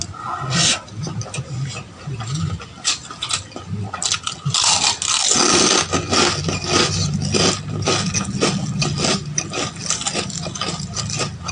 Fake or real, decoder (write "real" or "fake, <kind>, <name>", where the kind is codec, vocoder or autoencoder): real